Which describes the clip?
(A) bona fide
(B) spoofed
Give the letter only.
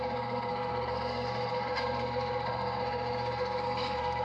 B